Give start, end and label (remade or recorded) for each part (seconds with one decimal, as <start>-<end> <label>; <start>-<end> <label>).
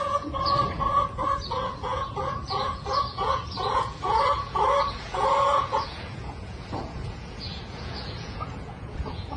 0.0-9.4 remade